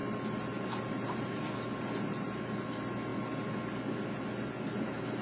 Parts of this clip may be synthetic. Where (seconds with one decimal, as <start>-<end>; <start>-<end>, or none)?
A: none